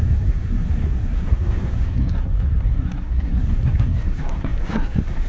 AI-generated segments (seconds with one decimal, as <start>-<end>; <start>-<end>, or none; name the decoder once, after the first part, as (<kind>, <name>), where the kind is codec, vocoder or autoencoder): 0.0-5.3 (codec, SNAC)